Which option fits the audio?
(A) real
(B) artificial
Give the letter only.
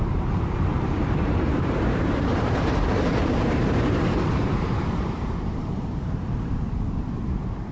B